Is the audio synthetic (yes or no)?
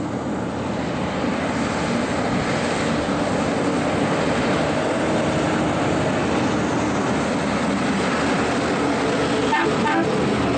no